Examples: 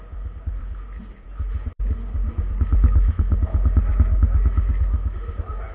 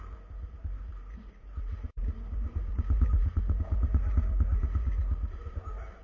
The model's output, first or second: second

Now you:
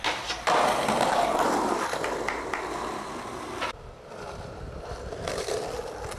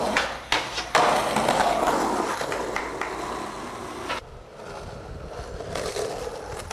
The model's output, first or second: first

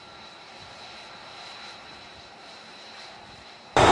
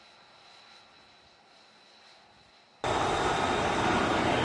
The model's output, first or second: first